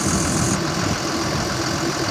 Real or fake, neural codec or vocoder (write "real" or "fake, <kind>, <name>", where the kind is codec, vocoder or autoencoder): real